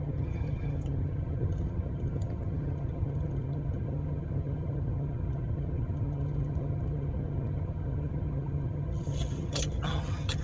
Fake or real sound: fake